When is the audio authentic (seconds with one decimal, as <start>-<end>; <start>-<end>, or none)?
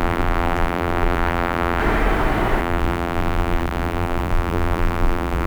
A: 1.8-2.6